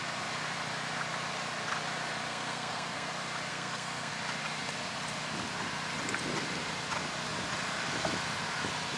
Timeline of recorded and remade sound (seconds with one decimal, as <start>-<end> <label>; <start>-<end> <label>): 0.0-2.3 recorded; 2.3-3.1 remade; 3.1-3.5 recorded; 3.5-4.1 remade; 4.1-9.0 recorded

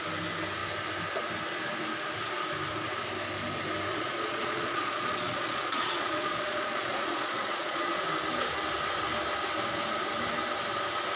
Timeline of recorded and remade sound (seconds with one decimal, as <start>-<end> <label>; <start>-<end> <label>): 0.0-3.9 recorded; 3.9-8.0 remade; 8.0-11.2 recorded

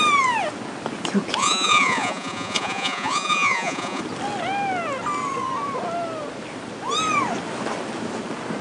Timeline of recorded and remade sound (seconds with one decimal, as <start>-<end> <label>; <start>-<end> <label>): 0.0-1.4 recorded; 1.4-4.0 remade; 4.0-8.6 recorded

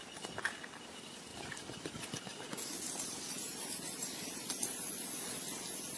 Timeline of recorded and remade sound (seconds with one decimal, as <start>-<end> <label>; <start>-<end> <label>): 0.0-6.0 recorded